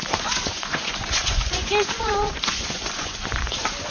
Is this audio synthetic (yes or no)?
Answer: yes